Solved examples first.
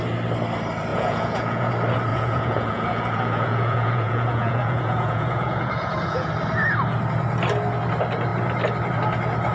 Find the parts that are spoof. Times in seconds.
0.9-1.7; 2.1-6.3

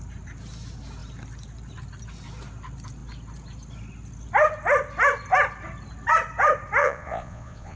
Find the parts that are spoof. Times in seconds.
6.8-7.8

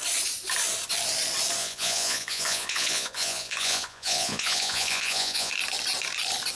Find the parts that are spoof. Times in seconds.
1.6-5.5

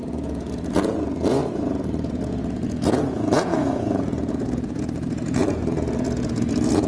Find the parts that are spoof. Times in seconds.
0.0-6.9

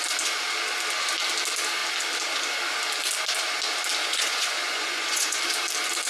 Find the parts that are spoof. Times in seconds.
4.0-5.4

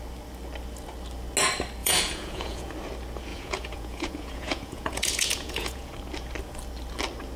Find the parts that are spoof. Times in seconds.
1.8-2.7; 3.3-5.9

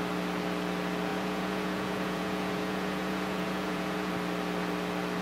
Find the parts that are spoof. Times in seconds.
1.1-4.1